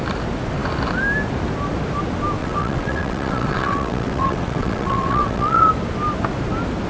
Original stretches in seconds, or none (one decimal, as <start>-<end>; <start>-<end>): 0.0-2.4; 5.7-6.9